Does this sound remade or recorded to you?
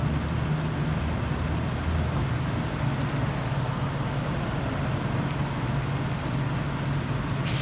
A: recorded